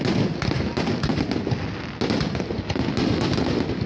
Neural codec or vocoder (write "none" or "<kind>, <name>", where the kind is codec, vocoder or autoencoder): none